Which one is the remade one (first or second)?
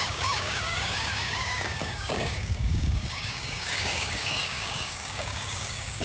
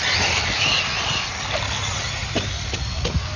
first